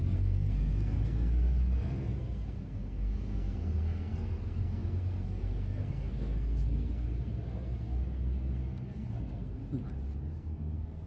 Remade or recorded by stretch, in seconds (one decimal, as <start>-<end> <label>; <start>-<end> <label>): 0.0-9.6 remade; 9.6-10.3 recorded; 10.3-11.1 remade